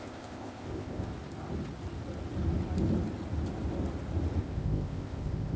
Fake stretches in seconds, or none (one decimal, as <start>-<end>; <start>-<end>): 0.0-1.1; 4.4-5.6